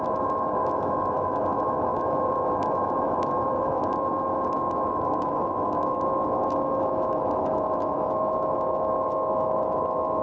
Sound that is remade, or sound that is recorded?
remade